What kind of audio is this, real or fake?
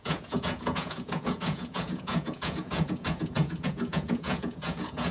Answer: fake